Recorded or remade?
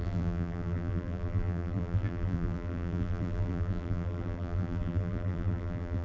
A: remade